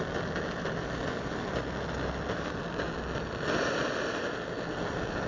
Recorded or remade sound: recorded